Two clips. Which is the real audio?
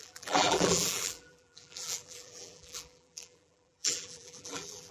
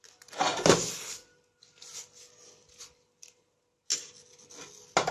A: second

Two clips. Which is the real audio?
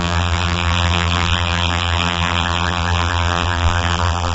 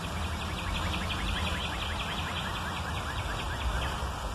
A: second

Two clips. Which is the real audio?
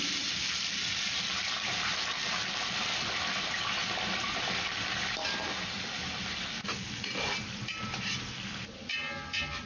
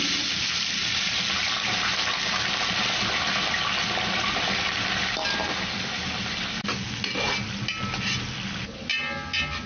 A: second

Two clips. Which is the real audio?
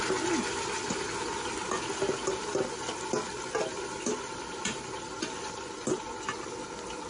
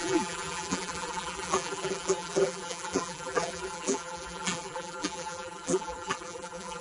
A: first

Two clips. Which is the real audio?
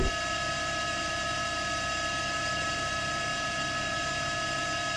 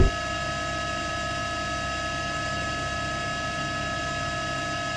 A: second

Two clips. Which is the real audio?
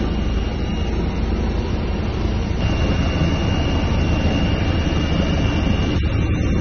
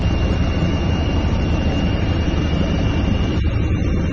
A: first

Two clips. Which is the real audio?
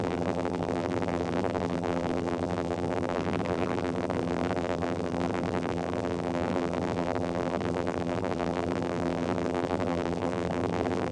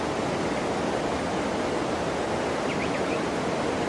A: second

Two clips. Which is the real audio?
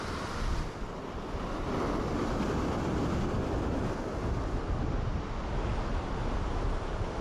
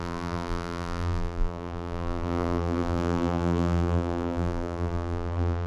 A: first